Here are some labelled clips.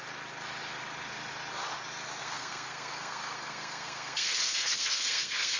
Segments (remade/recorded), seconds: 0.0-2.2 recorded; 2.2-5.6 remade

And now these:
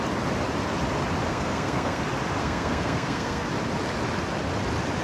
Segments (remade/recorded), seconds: 0.0-1.3 recorded; 1.3-2.0 remade; 2.0-2.4 recorded; 2.4-3.5 remade; 3.5-5.0 recorded

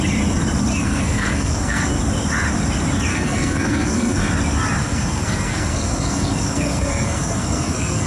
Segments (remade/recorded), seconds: 0.0-0.7 recorded; 0.7-2.0 remade; 2.0-3.1 recorded; 3.1-4.3 remade; 4.3-4.8 recorded; 4.8-8.1 remade

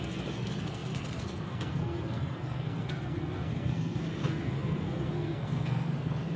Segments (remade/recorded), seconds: 0.0-6.4 remade

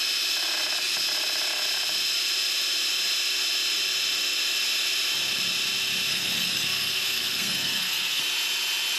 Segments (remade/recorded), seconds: 0.0-6.1 recorded; 6.1-8.2 remade; 8.2-9.0 recorded